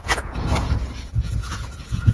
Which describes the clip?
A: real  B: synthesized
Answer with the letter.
B